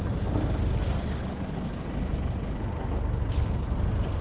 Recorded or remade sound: recorded